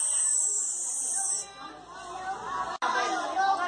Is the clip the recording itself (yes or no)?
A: yes